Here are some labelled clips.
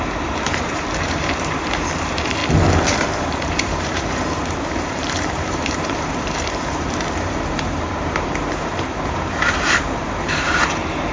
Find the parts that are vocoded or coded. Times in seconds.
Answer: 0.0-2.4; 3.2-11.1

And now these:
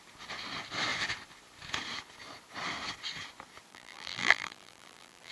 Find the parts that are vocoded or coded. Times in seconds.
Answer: 3.7-5.3

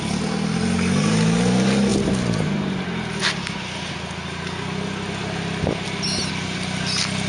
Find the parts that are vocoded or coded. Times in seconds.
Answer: none

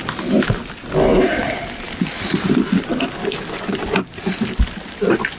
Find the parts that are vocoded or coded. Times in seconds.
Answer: none

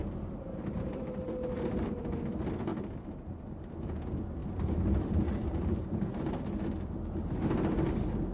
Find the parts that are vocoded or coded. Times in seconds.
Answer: 0.0-2.2; 2.7-3.7; 4.4-6.2

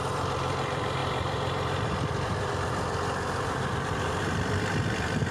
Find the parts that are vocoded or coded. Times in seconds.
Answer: 0.0-5.3

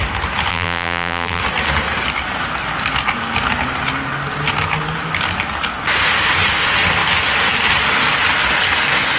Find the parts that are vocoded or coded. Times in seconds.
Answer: 0.5-1.4